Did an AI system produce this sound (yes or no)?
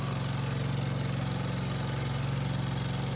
no